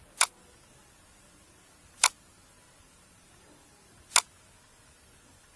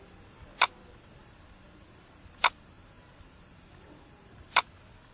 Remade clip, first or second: second